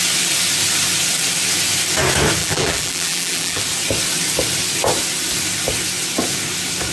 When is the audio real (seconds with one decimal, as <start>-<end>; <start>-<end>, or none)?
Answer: 0.0-2.4; 3.6-6.9